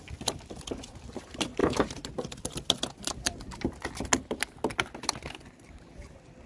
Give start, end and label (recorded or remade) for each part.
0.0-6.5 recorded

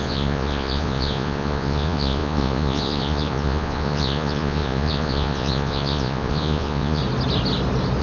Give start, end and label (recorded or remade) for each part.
0.0-7.0 remade; 7.0-8.0 recorded

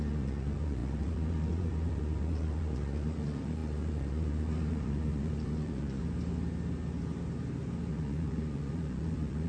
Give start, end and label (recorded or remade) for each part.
0.0-6.0 remade; 6.0-7.9 recorded; 7.9-9.5 remade

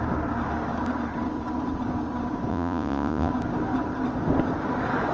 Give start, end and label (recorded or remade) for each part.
0.0-2.5 recorded; 2.5-3.3 remade; 3.3-5.1 recorded

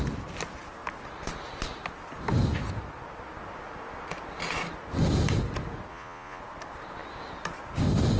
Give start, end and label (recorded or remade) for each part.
0.0-5.9 recorded; 5.9-6.4 remade; 6.4-8.2 recorded

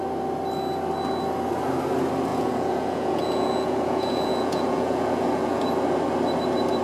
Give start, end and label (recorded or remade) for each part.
0.0-2.3 recorded; 2.3-5.6 remade; 5.6-6.8 recorded

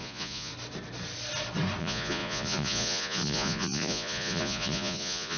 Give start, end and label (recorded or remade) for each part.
0.0-0.5 remade; 0.5-1.8 recorded; 1.8-5.4 remade

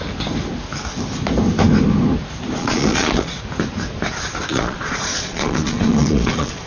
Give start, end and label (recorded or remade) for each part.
0.0-2.6 recorded; 2.6-3.4 remade; 3.4-4.5 recorded; 4.5-6.7 remade